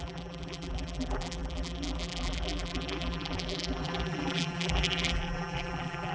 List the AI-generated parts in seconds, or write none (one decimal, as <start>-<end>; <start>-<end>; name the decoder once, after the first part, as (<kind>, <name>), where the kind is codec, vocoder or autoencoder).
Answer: 0.0-6.1 (vocoder, BigVGAN v2)